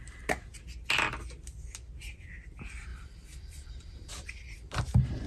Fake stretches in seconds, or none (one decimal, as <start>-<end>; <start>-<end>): 2.9-4.1